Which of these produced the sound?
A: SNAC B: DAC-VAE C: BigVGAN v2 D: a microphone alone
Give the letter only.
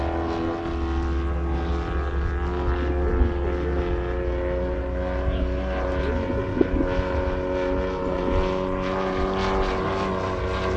D